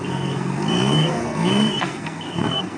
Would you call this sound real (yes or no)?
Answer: no